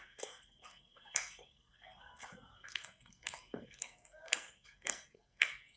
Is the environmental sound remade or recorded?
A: remade